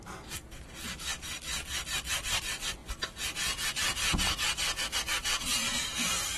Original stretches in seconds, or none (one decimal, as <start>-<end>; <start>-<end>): 0.0-2.8; 3.7-5.6